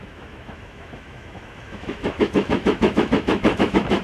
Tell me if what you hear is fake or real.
fake